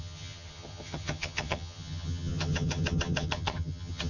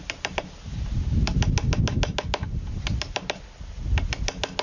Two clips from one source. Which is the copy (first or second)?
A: first